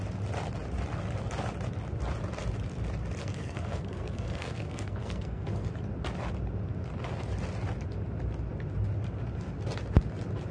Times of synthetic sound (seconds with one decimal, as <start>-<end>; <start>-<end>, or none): 3.2-5.7